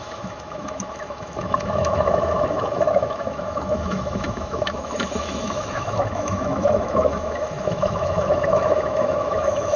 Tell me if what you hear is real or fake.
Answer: fake